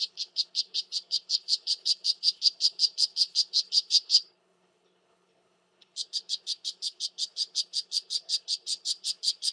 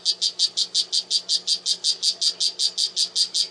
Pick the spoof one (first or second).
first